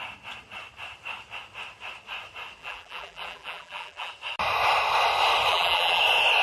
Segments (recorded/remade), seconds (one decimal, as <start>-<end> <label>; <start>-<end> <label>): 0.0-2.6 recorded; 2.6-4.1 remade; 4.1-5.5 recorded; 5.5-6.0 remade; 6.0-6.4 recorded